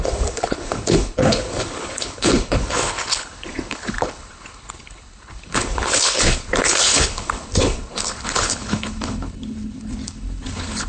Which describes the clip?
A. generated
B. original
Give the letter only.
A